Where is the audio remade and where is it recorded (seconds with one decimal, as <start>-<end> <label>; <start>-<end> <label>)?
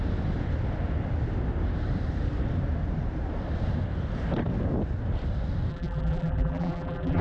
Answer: 0.0-5.7 recorded; 5.7-7.2 remade